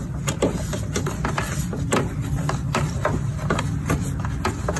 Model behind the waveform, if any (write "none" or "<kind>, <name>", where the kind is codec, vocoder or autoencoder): none